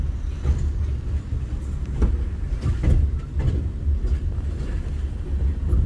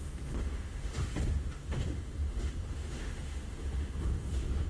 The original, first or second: first